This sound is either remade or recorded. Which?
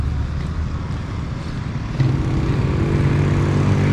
recorded